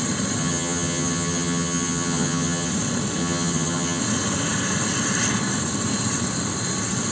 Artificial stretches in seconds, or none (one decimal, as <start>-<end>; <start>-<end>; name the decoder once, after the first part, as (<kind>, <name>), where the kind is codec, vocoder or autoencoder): 0.4-2.7 (vocoder, HiFi-GAN); 3.2-4.0